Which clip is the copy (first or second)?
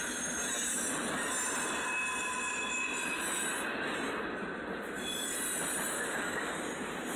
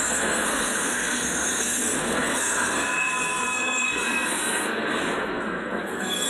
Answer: second